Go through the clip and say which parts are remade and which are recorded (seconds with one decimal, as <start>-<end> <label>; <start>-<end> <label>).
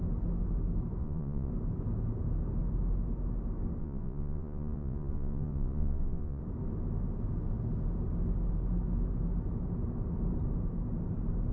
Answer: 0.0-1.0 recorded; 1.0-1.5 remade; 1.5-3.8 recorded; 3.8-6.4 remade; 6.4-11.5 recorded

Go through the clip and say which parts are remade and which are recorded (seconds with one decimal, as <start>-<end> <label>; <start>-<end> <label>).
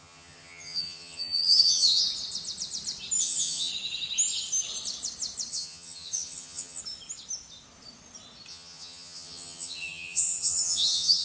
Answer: 0.0-2.0 remade; 2.0-3.2 recorded; 3.2-3.7 remade; 3.7-5.5 recorded; 5.5-6.8 remade; 6.8-8.5 recorded; 8.5-11.2 remade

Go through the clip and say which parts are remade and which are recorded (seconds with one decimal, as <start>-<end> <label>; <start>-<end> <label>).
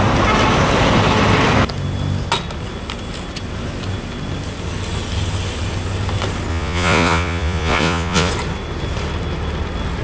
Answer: 0.0-6.5 recorded; 6.5-8.3 remade; 8.3-10.0 recorded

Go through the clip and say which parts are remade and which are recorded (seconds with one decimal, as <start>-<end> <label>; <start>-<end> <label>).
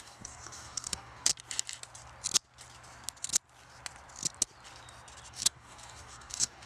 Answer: 0.0-1.3 remade; 1.3-5.3 recorded; 5.3-6.7 remade